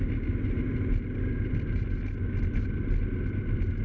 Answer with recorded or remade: recorded